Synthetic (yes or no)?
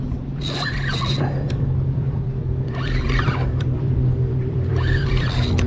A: yes